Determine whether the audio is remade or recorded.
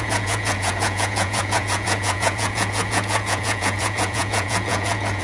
remade